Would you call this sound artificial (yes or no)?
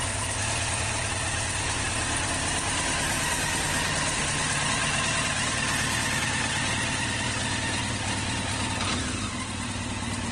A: no